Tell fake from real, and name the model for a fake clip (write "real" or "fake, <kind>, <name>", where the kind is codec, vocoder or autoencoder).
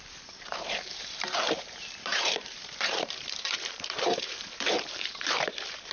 fake, vocoder, BigVGAN v2